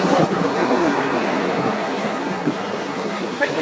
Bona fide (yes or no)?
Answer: no